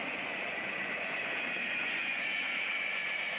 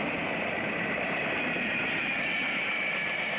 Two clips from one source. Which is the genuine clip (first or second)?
second